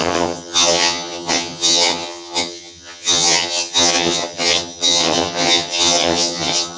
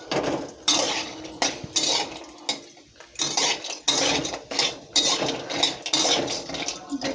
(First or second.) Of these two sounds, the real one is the second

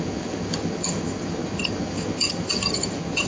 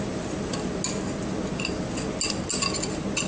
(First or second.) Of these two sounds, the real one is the second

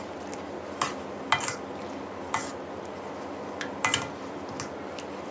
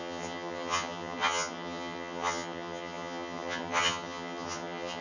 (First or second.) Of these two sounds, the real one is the first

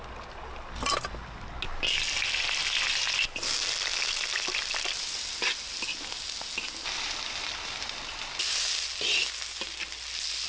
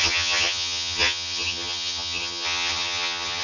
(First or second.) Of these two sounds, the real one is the first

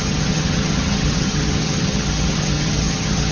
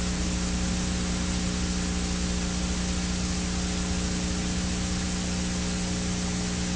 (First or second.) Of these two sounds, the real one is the second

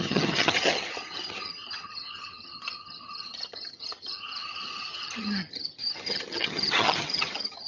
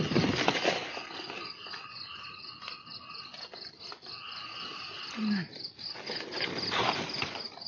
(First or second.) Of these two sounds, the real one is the second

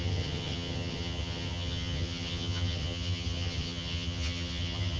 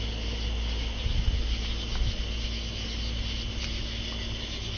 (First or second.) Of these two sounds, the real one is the second